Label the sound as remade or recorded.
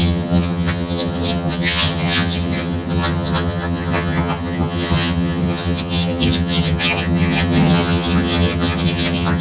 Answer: remade